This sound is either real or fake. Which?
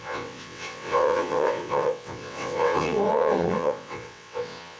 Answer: fake